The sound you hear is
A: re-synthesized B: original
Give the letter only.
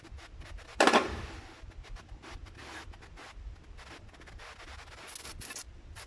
B